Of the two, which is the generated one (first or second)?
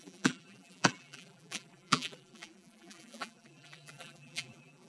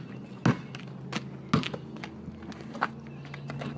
first